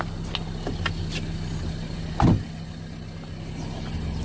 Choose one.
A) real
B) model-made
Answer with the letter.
A